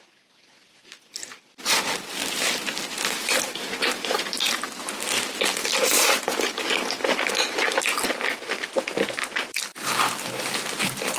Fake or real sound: real